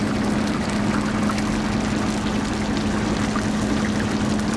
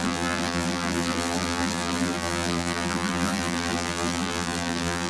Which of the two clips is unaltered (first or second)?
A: first